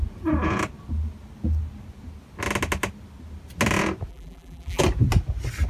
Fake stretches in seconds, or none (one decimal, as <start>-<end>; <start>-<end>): 4.1-4.8